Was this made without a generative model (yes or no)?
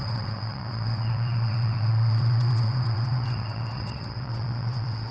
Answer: no